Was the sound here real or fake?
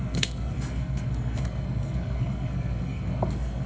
fake